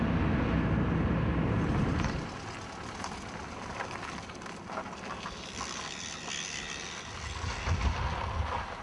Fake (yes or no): no